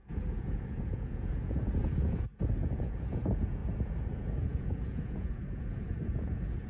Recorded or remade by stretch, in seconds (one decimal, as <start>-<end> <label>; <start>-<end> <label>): 0.0-6.7 remade